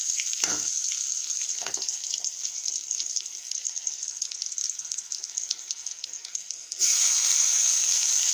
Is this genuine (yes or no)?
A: no